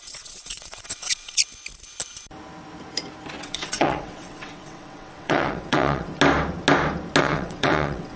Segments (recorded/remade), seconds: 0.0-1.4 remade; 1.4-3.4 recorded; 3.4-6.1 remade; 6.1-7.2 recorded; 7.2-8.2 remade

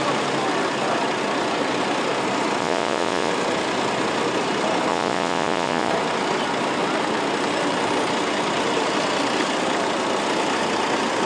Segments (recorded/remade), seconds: 0.0-2.6 recorded; 2.6-3.3 remade; 3.3-4.9 recorded; 4.9-5.9 remade; 5.9-11.3 recorded